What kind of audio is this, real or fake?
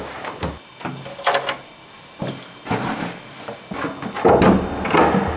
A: real